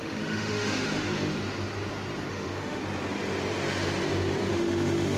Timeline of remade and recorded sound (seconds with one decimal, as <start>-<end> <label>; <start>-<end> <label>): 0.0-1.3 remade; 1.3-2.3 recorded; 2.3-2.8 remade; 2.8-4.5 recorded; 4.5-5.2 remade